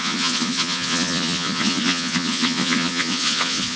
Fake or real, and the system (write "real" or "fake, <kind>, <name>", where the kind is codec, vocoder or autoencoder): fake, vocoder, Vocos